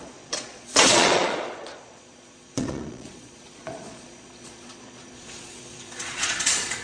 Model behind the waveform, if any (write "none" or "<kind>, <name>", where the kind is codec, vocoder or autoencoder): vocoder, Vocos